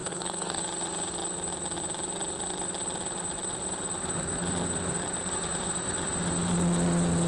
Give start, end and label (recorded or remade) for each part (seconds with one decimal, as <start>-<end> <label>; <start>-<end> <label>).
0.0-0.6 remade; 0.6-7.3 recorded